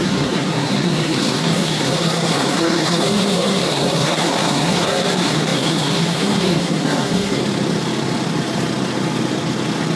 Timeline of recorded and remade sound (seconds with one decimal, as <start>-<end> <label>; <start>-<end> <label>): 0.0-7.4 remade; 7.4-10.0 recorded